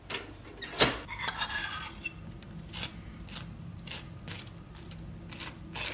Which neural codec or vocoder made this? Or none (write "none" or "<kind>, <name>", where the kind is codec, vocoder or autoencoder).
none